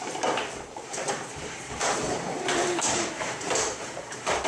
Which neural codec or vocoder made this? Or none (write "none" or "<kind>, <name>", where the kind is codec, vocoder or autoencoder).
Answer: vocoder, BigVGAN v2